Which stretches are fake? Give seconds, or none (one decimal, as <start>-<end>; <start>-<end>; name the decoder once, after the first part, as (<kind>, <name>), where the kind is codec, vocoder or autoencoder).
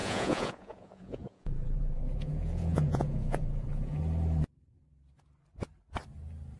0.0-4.0 (vocoder, Vocos)